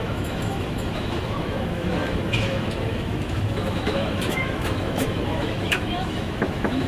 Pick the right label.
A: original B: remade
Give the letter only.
B